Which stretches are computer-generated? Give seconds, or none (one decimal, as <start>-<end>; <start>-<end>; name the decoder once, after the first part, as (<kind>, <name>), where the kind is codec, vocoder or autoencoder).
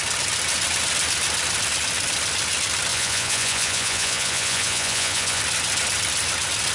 2.9-5.4 (vocoder, Vocos)